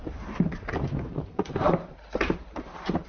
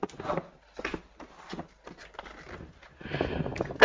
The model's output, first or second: first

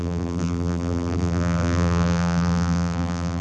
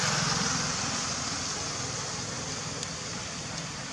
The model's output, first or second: first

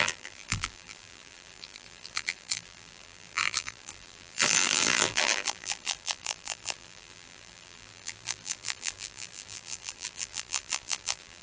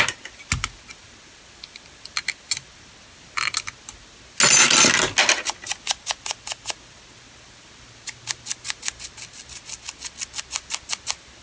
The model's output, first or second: first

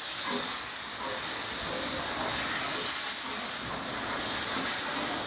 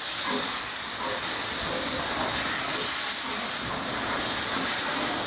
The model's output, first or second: second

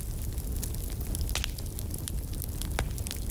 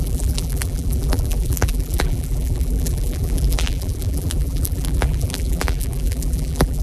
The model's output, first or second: second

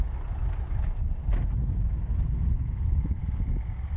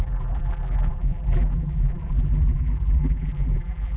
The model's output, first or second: second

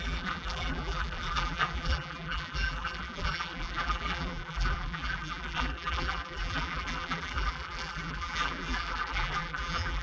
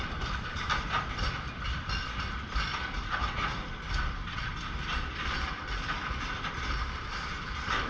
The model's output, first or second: first